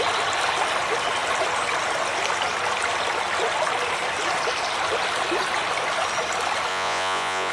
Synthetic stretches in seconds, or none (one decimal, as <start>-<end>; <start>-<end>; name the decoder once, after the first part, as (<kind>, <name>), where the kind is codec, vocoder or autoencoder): 6.7-7.5 (vocoder, Vocos)

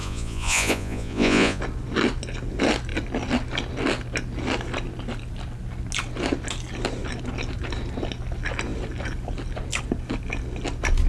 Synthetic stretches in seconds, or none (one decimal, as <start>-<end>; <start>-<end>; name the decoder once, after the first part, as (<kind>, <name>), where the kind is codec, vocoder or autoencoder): 0.0-1.6 (vocoder, Vocos)

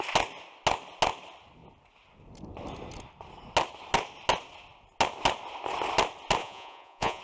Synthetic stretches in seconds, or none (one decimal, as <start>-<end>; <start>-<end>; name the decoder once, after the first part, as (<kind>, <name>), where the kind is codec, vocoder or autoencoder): 6.4-7.2 (vocoder, Vocos)

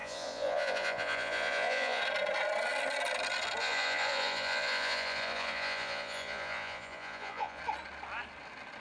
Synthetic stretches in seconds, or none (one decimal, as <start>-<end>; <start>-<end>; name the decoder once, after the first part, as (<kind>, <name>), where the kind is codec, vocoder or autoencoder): 0.0-2.0 (vocoder, Vocos); 3.6-7.6

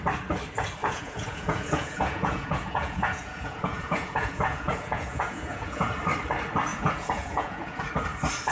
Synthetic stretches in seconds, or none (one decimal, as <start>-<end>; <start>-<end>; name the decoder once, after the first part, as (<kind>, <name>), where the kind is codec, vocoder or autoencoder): 0.8-5.9 (vocoder, Vocos); 6.7-7.9

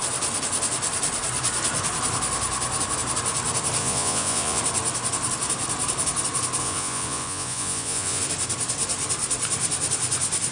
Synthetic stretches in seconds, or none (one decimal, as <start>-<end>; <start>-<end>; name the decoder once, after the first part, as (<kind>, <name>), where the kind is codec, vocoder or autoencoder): 3.8-4.6 (vocoder, Vocos); 6.6-8.2